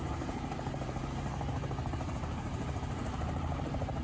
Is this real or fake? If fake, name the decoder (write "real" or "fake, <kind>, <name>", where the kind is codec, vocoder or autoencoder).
fake, vocoder, BigVGAN v2